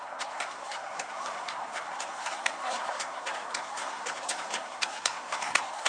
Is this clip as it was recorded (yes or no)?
no